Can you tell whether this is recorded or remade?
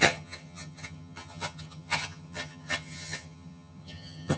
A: remade